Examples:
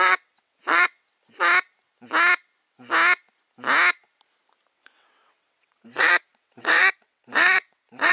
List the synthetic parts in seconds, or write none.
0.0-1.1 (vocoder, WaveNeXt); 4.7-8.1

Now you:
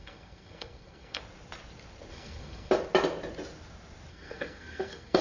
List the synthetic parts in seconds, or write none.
0.0-1.2 (codec, SNAC); 2.1-2.7; 4.1-5.2

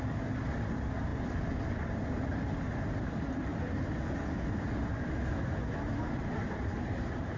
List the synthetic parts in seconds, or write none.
none

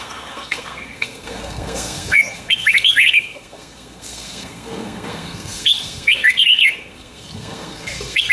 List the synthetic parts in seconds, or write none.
0.0-8.3 (codec, SNAC)

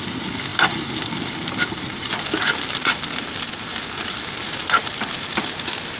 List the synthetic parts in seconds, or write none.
0.5-4.0 (vocoder, BigVGAN v2); 4.8-6.0

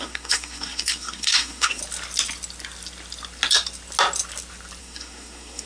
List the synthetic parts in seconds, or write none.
0.0-1.8 (codec, SNAC); 4.8-5.7

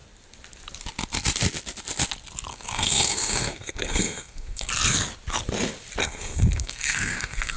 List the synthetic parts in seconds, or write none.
2.5-4.7 (codec, SNAC); 6.0-7.6

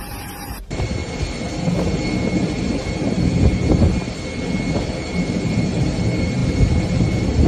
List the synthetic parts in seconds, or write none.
0.0-1.0 (vocoder, BigVGAN v2); 4.8-7.5